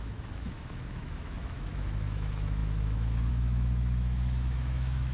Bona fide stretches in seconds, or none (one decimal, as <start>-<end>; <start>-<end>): none